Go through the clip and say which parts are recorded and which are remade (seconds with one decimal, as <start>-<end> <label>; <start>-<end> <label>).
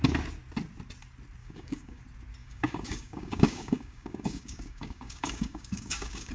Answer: 0.0-1.4 recorded; 1.4-2.0 remade; 2.0-2.4 recorded; 2.4-6.3 remade